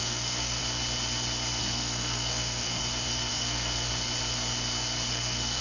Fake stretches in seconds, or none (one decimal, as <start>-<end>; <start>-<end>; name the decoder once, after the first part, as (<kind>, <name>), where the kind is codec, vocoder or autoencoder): 0.0-0.6 (codec, SNAC); 1.6-2.8; 3.3-3.9; 5.1-5.6